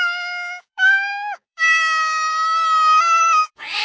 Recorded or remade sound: remade